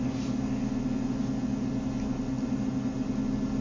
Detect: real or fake real